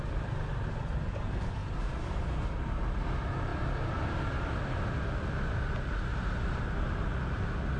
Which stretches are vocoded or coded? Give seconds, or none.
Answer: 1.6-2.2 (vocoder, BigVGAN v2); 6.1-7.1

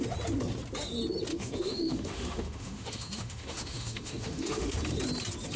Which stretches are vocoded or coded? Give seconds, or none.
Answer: 1.3-4.7 (autoencoder, DAC-VAE)